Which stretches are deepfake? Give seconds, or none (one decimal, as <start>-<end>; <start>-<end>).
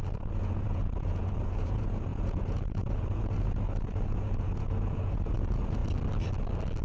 0.0-5.8